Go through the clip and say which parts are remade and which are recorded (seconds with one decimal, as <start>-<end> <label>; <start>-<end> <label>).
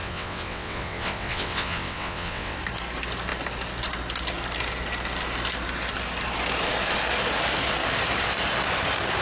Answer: 0.0-2.6 remade; 2.6-9.2 recorded